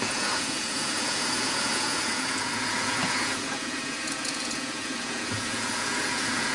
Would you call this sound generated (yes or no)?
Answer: yes